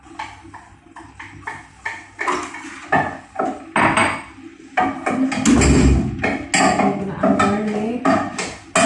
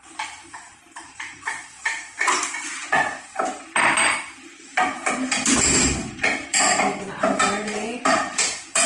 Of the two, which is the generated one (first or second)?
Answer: second